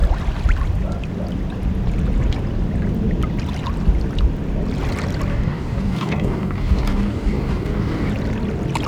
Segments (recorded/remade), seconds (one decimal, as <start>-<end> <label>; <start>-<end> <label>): 0.0-5.3 recorded; 5.3-8.1 remade; 8.1-8.9 recorded